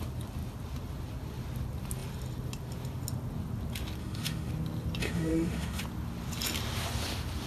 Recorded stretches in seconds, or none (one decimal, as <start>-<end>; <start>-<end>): 0.0-4.0; 4.5-5.0; 5.8-7.5